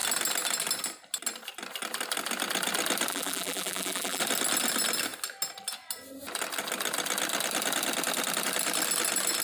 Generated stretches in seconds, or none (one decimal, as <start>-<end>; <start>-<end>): 3.1-4.2